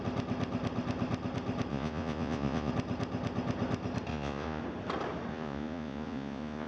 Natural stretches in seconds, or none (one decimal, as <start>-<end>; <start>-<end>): 0.0-1.7; 2.7-4.1; 4.6-5.3